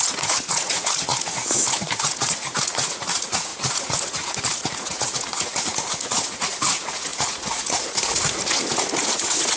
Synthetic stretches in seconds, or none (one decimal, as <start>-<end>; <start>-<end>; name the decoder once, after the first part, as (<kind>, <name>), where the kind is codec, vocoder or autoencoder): 0.0-9.6 (vocoder, Vocos)